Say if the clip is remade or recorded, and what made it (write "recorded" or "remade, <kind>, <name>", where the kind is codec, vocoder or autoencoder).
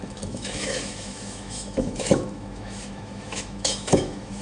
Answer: remade, autoencoder, DAC-VAE